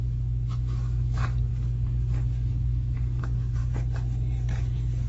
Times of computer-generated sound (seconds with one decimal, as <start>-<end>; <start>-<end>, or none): 0.0-3.6

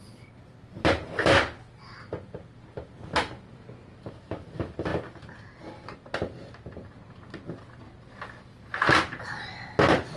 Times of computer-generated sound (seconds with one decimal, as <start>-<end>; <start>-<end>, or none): none

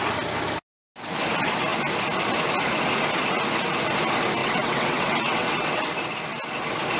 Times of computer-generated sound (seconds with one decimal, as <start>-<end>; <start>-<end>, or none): 4.4-5.8

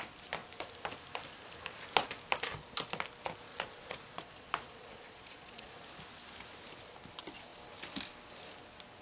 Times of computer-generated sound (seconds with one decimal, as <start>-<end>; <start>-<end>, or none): 3.5-5.7